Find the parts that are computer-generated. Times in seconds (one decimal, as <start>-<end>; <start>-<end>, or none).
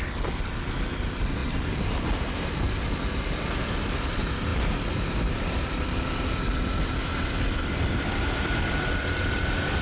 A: 1.4-2.5; 4.5-9.8